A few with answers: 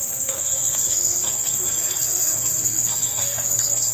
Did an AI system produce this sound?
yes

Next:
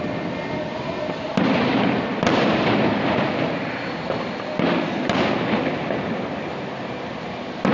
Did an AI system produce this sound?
no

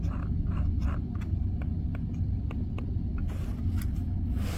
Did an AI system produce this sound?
no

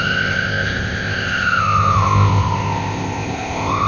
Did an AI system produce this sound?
yes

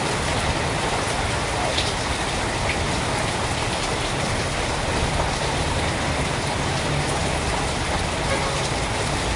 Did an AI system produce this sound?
no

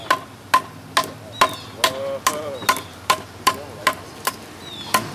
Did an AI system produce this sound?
no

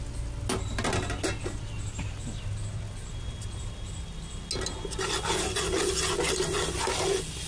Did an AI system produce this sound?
no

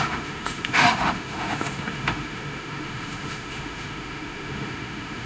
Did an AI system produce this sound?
yes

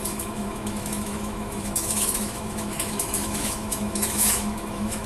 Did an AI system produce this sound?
yes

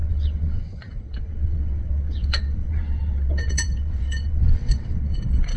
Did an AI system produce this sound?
yes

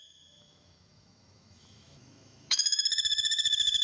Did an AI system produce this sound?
yes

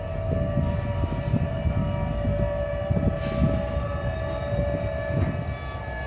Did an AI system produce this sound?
no